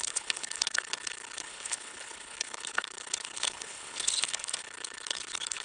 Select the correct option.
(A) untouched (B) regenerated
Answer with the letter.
B